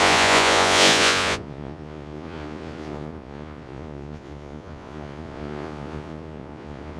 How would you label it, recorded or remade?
remade